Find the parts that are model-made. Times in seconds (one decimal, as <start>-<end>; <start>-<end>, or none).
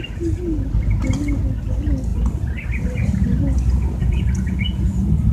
4.0-5.3